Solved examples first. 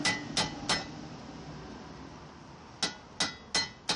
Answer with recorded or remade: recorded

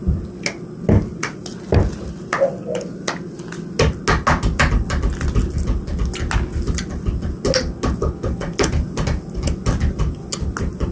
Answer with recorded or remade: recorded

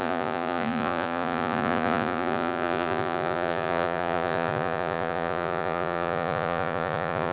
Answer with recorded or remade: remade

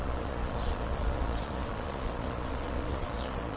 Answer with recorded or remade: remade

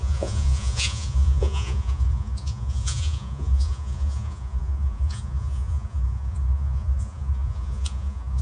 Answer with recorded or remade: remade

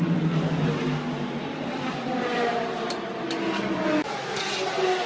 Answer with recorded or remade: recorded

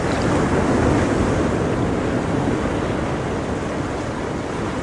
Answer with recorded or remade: recorded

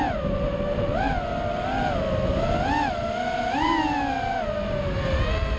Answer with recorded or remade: recorded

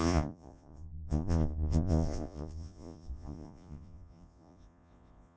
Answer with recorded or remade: remade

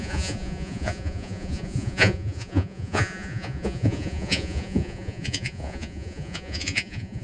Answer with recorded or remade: remade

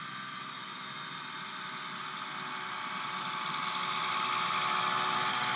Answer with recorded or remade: recorded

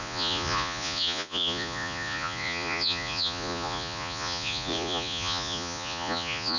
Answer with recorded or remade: remade